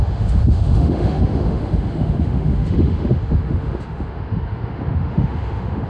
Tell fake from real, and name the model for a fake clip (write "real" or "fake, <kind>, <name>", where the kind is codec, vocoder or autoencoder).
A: fake, autoencoder, DAC-VAE